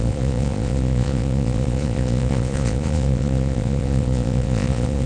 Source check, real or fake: fake